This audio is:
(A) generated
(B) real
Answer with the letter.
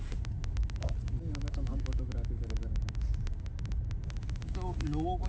B